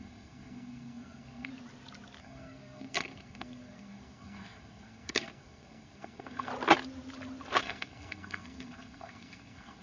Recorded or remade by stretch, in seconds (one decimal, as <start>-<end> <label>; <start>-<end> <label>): 0.0-1.5 remade; 1.5-2.2 recorded; 2.2-6.5 remade; 6.5-7.6 recorded; 7.6-9.8 remade